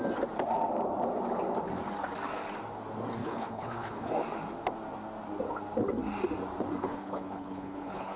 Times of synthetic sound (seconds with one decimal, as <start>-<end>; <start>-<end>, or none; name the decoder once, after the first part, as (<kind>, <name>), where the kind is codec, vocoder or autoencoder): 3.2-4.1 (codec, HILCodec); 6.8-8.2